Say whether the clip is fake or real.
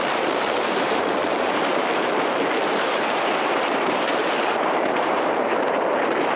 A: fake